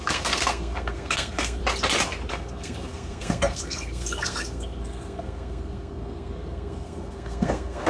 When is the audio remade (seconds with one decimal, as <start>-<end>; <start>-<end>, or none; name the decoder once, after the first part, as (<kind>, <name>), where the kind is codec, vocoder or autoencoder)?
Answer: 0.0-1.6 (codec, SNAC); 2.3-7.9